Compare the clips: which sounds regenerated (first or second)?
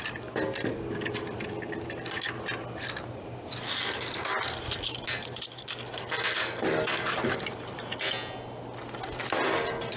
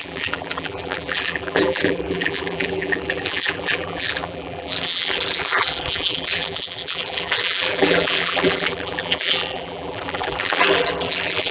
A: second